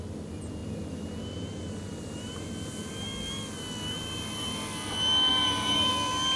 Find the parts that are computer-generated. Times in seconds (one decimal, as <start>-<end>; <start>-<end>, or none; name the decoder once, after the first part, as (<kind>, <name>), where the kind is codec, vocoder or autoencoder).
0.6-2.5 (vocoder, BigVGAN v2); 5.3-5.9